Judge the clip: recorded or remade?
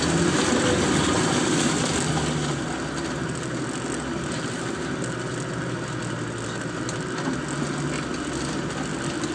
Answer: recorded